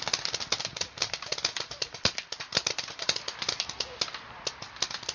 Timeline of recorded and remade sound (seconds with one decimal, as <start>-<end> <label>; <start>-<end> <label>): 0.0-5.1 recorded